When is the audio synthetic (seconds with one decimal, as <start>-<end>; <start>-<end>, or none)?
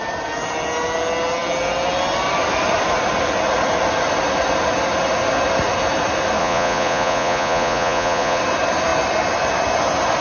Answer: 6.4-8.4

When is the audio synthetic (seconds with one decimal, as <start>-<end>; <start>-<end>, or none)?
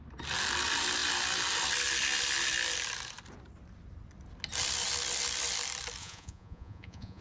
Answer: 6.0-7.2